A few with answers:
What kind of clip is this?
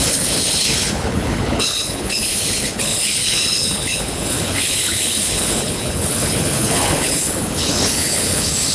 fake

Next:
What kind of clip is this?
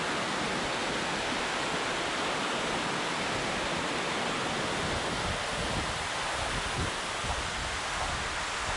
real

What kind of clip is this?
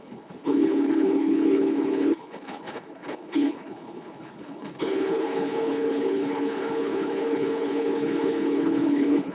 fake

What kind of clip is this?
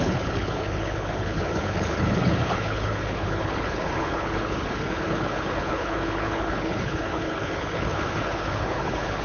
fake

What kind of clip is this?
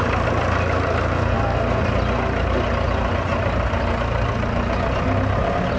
real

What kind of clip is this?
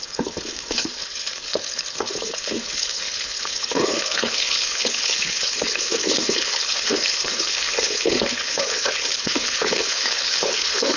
fake